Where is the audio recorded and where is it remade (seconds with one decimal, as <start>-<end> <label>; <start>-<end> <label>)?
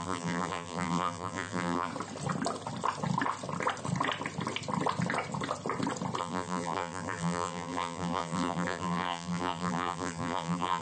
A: 0.0-1.9 remade; 1.9-6.2 recorded; 6.2-10.8 remade